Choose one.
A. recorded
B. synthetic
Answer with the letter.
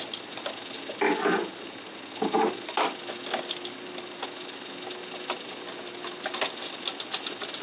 A